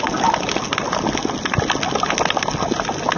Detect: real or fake real